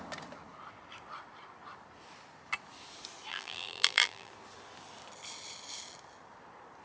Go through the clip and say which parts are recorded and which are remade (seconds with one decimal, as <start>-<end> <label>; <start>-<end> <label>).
0.0-3.3 recorded; 3.3-4.3 remade; 4.3-6.8 recorded